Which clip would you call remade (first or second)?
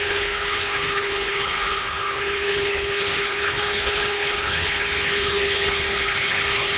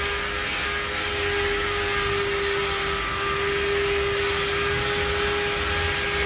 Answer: first